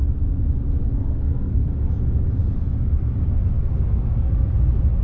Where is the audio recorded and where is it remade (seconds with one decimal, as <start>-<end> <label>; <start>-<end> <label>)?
0.0-0.8 recorded; 0.8-1.7 remade; 1.7-3.6 recorded; 3.6-4.5 remade; 4.5-5.0 recorded